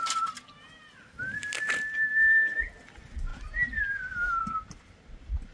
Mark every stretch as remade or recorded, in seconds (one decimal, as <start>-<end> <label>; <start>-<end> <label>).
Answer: 0.0-5.5 recorded